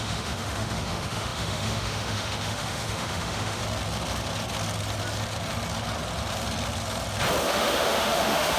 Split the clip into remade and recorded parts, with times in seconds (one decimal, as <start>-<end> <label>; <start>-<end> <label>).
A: 0.0-3.6 remade; 3.6-7.4 recorded; 7.4-8.6 remade